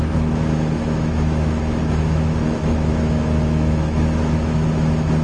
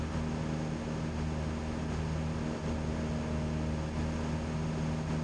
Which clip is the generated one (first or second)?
first